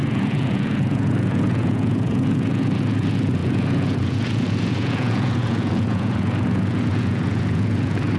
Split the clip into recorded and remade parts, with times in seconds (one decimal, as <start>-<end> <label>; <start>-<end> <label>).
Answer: 0.0-8.2 remade